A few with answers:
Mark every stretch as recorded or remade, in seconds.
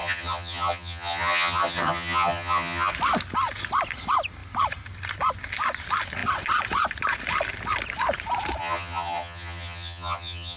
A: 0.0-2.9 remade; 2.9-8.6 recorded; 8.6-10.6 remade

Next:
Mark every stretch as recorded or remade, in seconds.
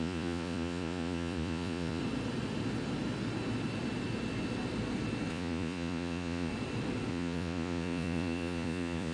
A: 0.0-2.0 remade; 2.0-5.3 recorded; 5.3-6.5 remade; 6.5-7.1 recorded; 7.1-9.1 remade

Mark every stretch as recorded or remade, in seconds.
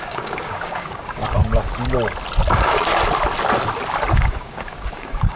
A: 0.0-1.2 remade; 1.2-2.5 recorded; 2.5-2.9 remade; 2.9-4.1 recorded; 4.1-5.4 remade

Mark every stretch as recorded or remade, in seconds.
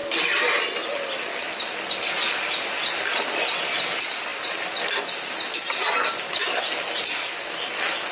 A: 0.0-0.6 remade; 0.6-8.1 recorded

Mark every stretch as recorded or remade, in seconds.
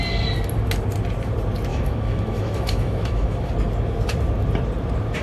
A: 0.0-1.7 recorded; 1.7-3.5 remade; 3.5-5.2 recorded